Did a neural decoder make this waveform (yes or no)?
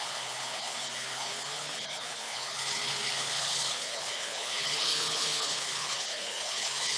yes